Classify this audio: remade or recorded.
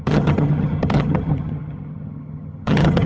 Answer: remade